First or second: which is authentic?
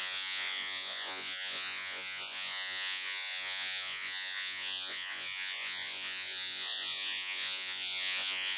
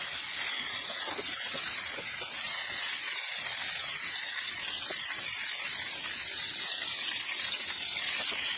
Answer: second